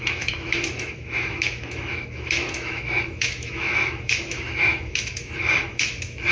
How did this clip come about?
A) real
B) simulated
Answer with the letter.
B